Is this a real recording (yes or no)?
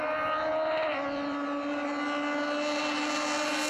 yes